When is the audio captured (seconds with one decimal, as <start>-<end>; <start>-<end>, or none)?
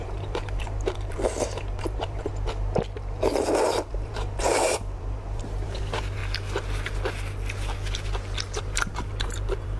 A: 2.3-3.9; 6.2-8.6